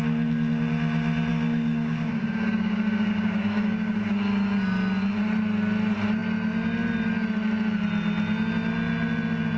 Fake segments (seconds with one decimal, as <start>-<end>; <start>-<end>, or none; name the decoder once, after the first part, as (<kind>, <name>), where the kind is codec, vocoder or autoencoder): 1.3-4.1 (codec, DAC)